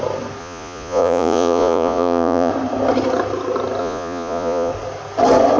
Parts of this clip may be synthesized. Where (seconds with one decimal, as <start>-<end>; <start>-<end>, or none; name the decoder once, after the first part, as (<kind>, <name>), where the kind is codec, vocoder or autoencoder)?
0.4-2.5 (vocoder, Vocos); 3.8-4.7